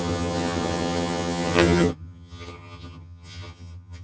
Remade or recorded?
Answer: remade